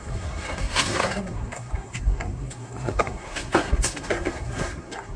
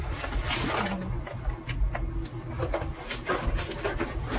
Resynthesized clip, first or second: first